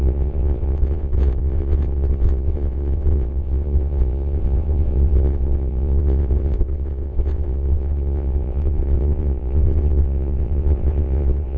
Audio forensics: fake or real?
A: fake